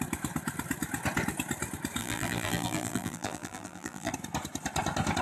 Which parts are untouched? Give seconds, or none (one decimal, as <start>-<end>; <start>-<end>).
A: 0.0-2.0; 4.1-5.2